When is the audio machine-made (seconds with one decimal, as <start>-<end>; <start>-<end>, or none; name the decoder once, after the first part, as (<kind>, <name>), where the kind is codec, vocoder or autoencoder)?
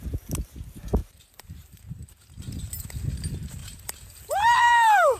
1.0-2.4 (vocoder, BigVGAN v2); 3.6-5.2